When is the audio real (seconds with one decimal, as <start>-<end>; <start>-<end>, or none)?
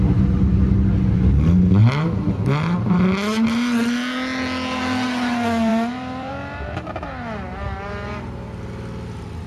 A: 0.0-1.8; 2.3-5.7; 6.3-9.5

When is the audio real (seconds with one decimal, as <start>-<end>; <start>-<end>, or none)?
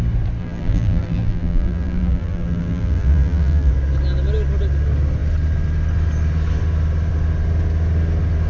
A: 0.0-0.4; 3.7-8.5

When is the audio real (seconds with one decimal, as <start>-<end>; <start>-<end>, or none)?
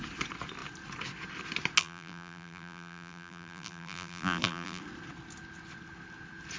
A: 0.0-1.8; 4.8-6.6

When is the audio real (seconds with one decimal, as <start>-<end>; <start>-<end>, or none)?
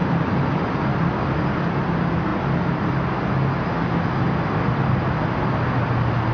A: 1.0-6.3